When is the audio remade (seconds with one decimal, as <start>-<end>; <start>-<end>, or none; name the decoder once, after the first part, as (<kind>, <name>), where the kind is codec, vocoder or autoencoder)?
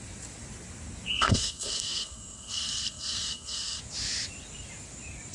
1.1-3.8 (codec, SNAC)